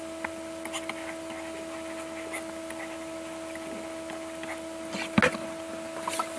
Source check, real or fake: real